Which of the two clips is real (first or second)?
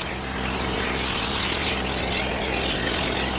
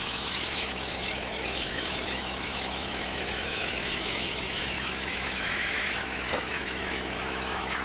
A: first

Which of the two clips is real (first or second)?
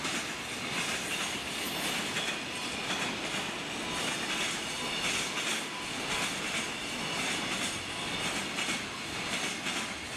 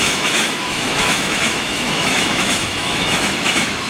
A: first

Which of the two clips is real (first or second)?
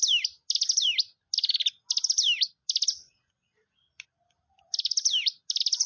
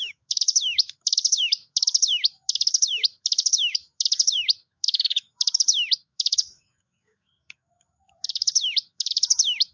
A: first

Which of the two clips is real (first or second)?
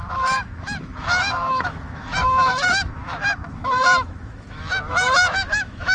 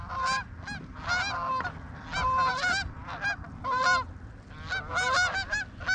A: second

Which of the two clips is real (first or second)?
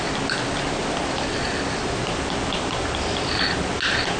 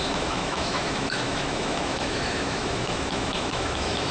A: first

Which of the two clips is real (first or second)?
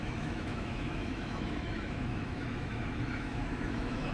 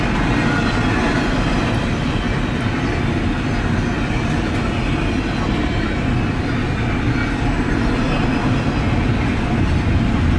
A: second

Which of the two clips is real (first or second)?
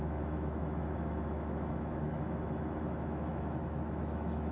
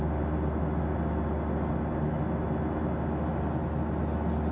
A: second